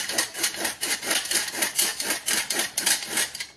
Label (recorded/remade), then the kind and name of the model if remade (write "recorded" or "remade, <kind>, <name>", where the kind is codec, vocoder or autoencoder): recorded